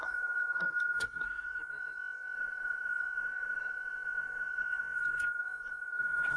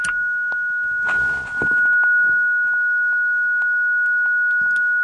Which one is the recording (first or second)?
second